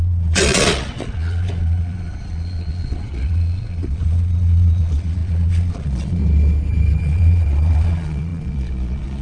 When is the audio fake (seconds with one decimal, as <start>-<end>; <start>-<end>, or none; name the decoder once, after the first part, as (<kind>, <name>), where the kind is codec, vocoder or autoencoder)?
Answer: 0.0-6.2 (vocoder, Vocos); 7.0-9.2